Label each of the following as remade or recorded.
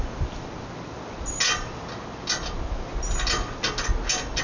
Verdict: recorded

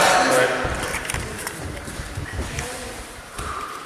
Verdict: remade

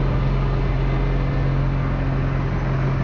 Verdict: recorded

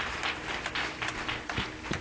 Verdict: recorded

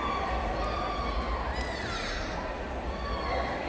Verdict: recorded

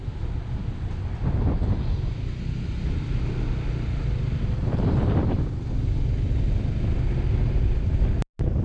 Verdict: recorded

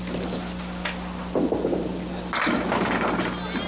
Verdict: recorded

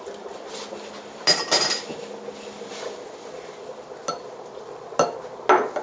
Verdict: recorded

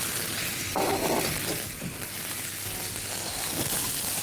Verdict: recorded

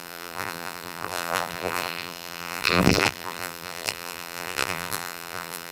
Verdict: remade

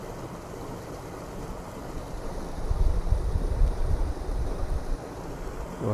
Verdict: recorded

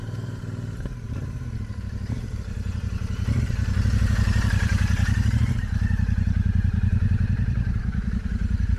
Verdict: remade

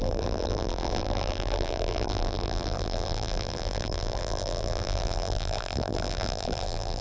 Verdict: remade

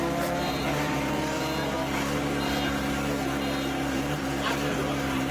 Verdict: recorded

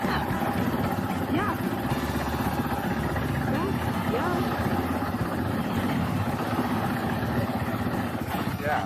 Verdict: recorded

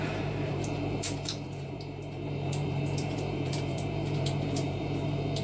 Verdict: remade